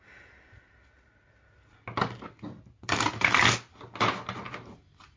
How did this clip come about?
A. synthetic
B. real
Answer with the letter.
B